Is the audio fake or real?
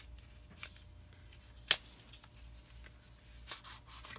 real